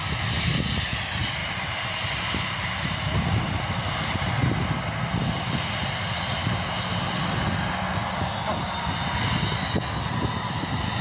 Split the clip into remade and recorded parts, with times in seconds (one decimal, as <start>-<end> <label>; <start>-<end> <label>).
0.0-1.4 recorded; 1.4-3.6 remade; 3.6-11.0 recorded